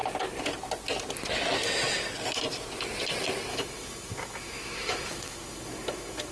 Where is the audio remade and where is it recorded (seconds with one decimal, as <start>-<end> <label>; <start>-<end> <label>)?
0.0-3.5 recorded; 3.5-6.3 remade